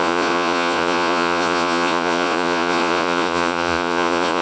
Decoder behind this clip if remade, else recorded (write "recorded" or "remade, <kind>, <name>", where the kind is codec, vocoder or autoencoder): remade, vocoder, Vocos